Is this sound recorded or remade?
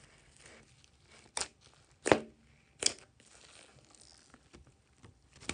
recorded